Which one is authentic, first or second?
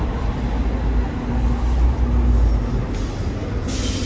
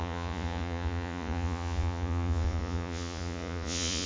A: first